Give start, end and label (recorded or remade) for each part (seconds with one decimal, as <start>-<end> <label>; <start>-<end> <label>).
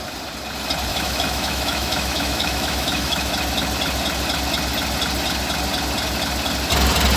0.0-0.9 recorded; 0.9-3.3 remade; 3.3-7.2 recorded